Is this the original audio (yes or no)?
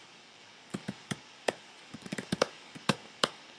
no